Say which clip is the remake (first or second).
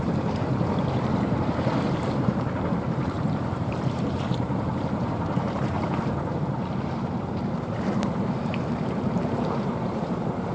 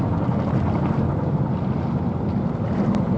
first